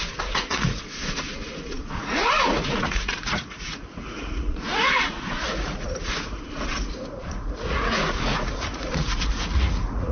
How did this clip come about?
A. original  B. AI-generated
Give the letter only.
B